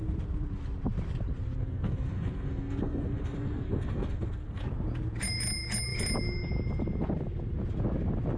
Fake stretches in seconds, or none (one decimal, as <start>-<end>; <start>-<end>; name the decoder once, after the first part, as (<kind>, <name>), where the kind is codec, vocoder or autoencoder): 1.6-4.6 (codec, SNAC)